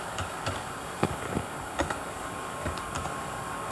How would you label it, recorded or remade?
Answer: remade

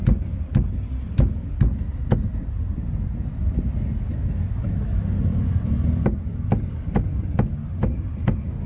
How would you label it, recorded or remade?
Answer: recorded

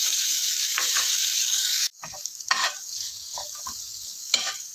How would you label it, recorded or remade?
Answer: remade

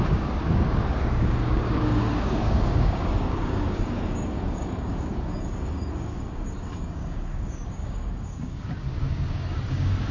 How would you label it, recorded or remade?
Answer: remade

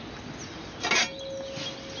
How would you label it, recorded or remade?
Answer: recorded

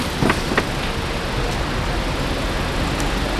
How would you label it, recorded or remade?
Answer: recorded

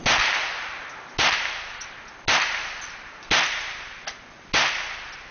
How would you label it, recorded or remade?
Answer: recorded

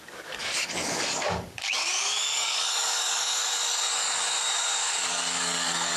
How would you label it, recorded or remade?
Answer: remade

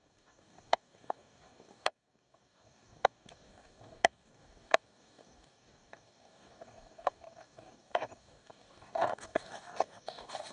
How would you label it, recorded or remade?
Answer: remade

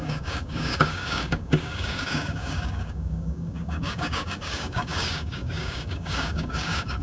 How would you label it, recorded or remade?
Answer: remade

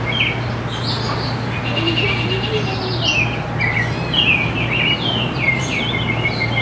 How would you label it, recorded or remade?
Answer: recorded